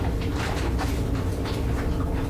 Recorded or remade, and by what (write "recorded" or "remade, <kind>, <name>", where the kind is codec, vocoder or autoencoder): recorded